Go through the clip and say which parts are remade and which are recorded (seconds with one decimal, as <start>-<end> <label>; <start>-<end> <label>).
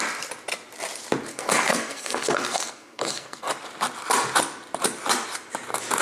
0.0-1.3 recorded; 1.3-3.5 remade; 3.5-6.0 recorded